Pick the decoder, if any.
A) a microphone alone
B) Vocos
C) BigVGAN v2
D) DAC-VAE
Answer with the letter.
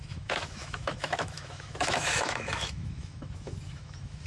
D